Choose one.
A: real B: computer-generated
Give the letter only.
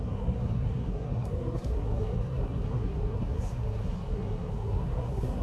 B